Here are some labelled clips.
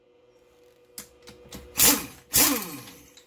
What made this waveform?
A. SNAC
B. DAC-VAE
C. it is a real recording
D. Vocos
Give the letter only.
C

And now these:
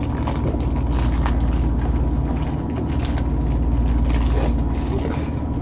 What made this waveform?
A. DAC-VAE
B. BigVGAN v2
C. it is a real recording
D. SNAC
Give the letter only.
C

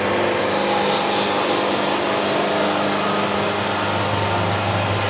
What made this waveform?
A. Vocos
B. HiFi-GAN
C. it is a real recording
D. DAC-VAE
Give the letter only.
C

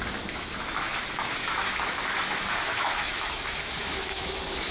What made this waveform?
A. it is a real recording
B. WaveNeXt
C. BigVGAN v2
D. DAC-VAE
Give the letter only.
D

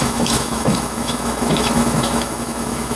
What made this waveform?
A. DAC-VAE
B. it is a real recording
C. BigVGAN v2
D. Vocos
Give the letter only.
A